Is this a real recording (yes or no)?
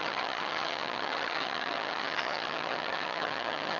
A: no